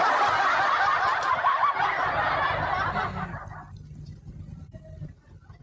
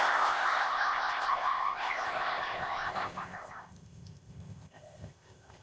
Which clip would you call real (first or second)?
first